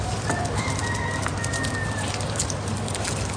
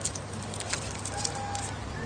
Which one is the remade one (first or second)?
first